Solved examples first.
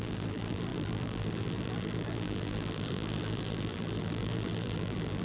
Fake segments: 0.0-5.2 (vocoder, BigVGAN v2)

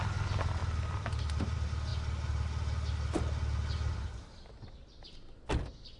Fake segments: 0.6-1.2 (vocoder, BigVGAN v2)

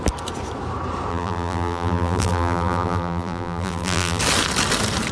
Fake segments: 1.1-4.2 (vocoder, BigVGAN v2)

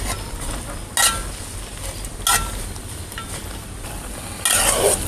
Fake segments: none

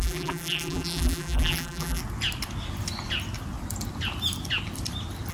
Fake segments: 0.0-2.0 (vocoder, BigVGAN v2)